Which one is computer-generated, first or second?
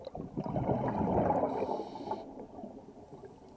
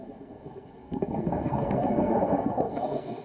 second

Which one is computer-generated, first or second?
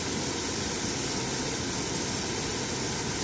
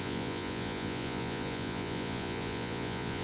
second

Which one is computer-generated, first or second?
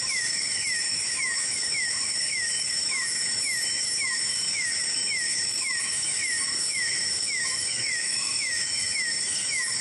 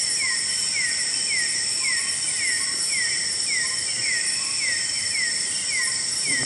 first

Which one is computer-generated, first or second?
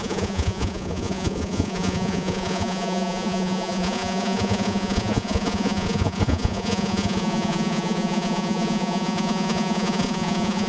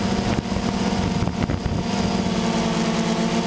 first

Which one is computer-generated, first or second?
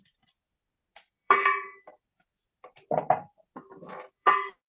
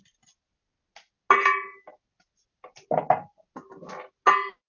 first